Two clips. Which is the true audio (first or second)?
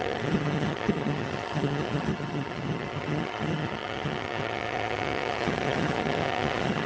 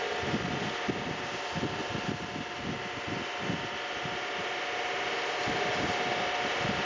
second